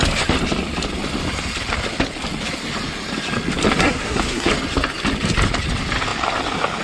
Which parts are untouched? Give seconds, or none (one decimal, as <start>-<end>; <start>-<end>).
0.0-3.8; 4.5-6.8

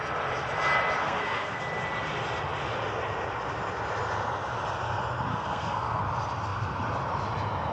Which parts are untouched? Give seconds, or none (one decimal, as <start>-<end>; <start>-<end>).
0.0-1.0; 1.6-5.3; 6.0-7.7

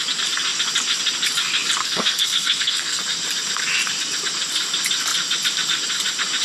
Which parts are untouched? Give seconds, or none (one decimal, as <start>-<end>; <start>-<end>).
0.0-1.8; 3.0-6.4

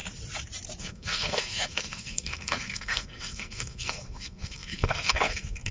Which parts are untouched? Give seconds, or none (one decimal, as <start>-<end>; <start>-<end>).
0.0-0.8

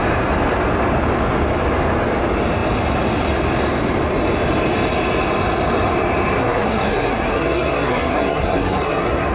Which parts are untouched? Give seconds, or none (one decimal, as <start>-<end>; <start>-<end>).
0.0-6.4

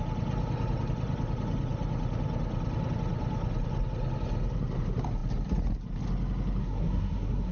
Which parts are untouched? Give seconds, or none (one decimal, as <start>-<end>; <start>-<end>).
0.0-6.6

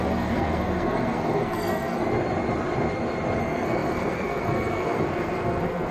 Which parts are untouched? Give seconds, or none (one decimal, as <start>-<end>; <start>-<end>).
2.0-3.4

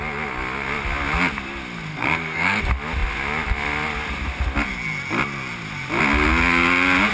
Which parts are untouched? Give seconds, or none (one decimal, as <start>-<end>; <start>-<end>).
0.0-1.9; 2.6-7.1